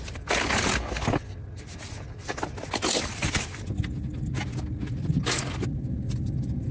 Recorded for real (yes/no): yes